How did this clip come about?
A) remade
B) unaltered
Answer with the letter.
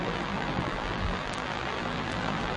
A